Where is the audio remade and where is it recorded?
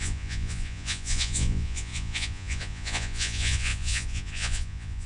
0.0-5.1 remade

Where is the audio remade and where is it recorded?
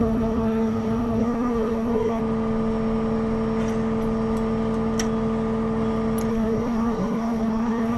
0.0-2.2 remade; 2.2-6.3 recorded; 6.3-8.0 remade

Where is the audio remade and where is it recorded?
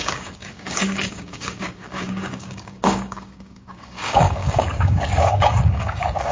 0.0-6.3 remade